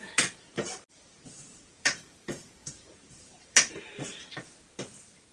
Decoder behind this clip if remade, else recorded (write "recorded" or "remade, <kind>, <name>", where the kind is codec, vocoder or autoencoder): remade, vocoder, BigVGAN v2